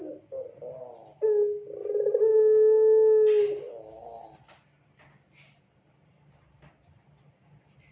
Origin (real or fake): real